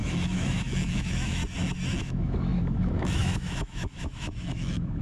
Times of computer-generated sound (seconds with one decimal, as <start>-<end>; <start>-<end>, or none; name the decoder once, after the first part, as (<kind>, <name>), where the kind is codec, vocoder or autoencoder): 0.0-1.4 (autoencoder, DAC-VAE); 2.0-5.0